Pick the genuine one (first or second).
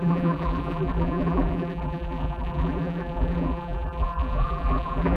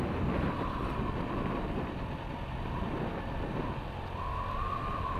second